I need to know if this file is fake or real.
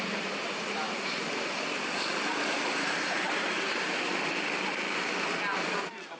real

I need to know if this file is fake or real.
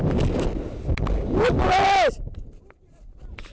real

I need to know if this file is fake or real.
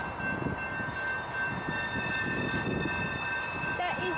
real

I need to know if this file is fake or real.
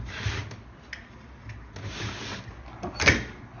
real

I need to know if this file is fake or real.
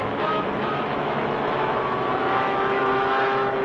fake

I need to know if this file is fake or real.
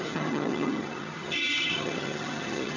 fake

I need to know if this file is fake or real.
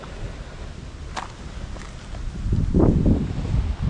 real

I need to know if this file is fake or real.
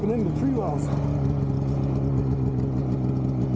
real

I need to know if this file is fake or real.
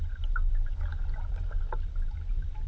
real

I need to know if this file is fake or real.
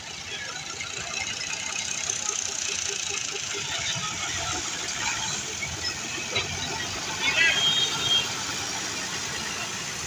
real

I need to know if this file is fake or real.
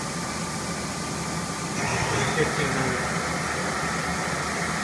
real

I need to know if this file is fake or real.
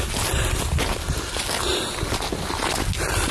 real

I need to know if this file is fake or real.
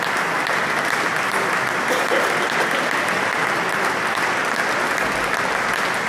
real